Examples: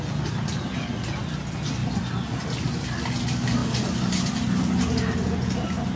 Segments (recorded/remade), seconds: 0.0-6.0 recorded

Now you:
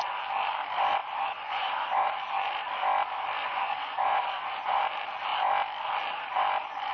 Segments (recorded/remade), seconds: 0.0-1.0 recorded; 1.0-2.1 remade; 2.1-3.4 recorded; 3.4-4.8 remade; 4.8-6.9 recorded

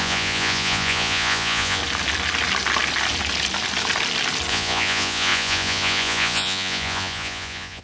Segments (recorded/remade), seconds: 0.0-1.8 remade; 1.8-4.5 recorded; 4.5-7.8 remade

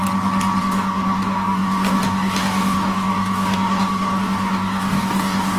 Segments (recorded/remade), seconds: 0.0-0.6 recorded; 0.6-5.6 remade

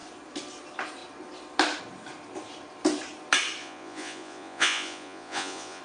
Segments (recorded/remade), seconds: 0.0-3.6 recorded; 3.6-5.8 remade